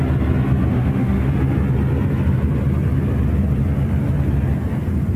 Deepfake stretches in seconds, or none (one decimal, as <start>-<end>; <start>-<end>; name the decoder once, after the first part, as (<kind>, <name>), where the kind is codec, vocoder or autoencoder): 0.7-1.3 (autoencoder, DAC-VAE)